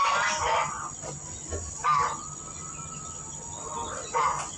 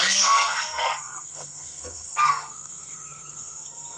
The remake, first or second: second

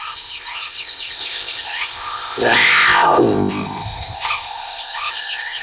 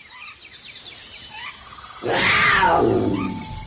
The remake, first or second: first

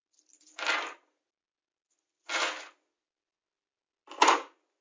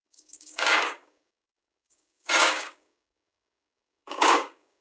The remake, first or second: second